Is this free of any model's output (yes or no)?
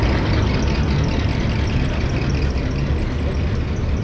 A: yes